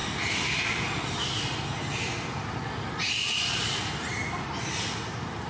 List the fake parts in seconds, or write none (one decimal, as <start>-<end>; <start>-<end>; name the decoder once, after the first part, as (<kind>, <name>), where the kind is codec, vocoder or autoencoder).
none